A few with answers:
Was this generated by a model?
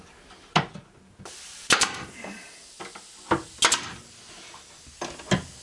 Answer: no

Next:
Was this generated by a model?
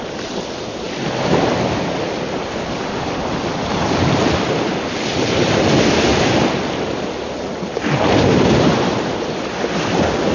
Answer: no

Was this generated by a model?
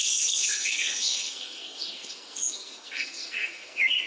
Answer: yes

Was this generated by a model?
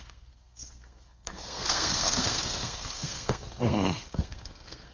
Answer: yes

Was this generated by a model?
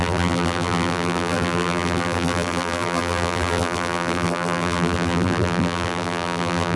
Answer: yes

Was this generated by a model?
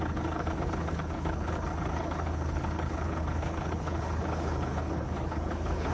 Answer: yes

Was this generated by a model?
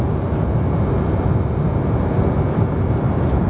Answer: no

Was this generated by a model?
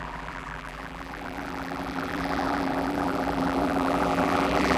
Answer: yes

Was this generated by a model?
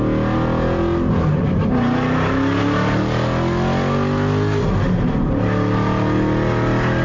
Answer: no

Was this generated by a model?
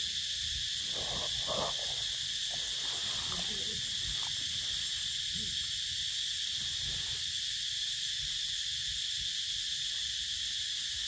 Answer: no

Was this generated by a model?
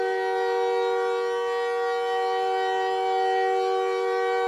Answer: no